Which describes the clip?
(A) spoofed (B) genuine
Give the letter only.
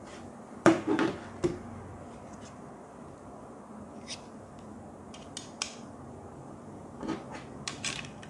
B